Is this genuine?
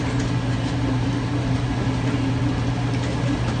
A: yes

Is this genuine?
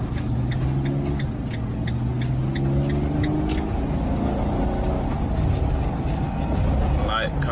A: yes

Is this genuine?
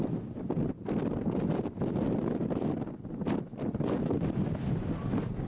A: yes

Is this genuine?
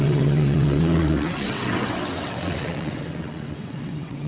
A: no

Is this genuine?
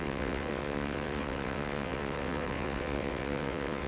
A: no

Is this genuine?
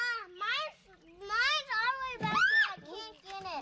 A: yes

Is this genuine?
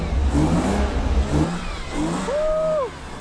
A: yes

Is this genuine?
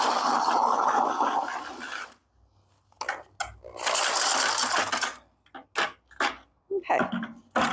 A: yes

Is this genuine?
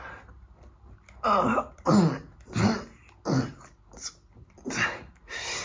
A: yes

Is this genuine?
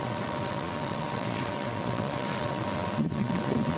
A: no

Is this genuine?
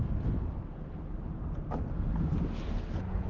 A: yes